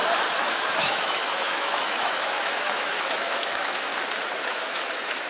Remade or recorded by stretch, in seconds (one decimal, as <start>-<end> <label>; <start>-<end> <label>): 0.0-0.5 recorded; 0.5-3.9 remade; 3.9-4.5 recorded; 4.5-5.3 remade